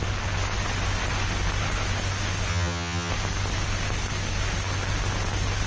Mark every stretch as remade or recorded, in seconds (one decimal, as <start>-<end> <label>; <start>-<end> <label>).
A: 0.0-2.5 recorded; 2.5-3.1 remade; 3.1-5.7 recorded